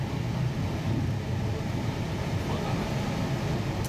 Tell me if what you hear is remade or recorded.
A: recorded